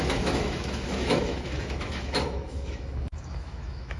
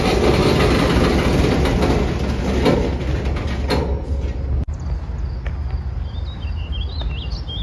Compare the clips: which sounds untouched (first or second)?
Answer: second